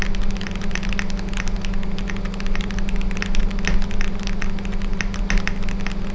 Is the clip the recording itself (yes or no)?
yes